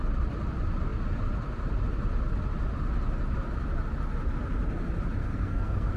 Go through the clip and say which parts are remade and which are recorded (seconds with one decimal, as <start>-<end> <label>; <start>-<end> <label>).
0.0-5.2 recorded; 5.2-6.0 remade